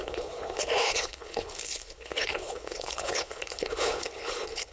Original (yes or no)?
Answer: no